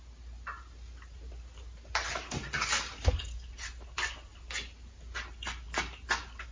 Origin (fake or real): real